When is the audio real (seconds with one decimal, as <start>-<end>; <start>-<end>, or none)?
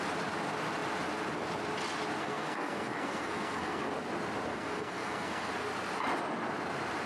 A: 0.0-2.2; 3.8-4.5; 5.5-7.1